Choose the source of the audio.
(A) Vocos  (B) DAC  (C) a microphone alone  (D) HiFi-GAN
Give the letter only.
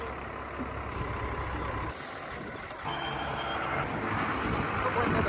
C